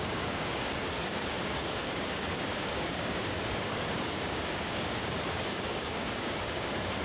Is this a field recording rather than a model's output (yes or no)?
no